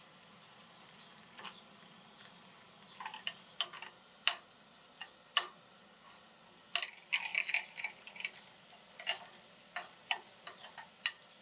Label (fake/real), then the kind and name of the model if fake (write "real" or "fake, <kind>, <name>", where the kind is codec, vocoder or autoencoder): real